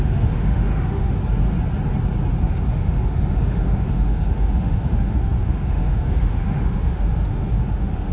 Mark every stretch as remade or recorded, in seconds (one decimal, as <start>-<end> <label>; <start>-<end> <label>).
0.0-1.2 remade; 1.2-2.4 recorded; 2.4-8.1 remade